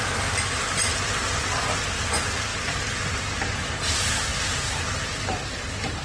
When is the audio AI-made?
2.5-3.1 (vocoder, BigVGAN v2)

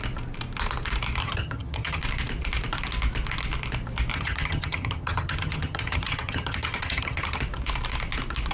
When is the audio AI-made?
1.2-2.0 (vocoder, HiFi-GAN); 4.1-7.4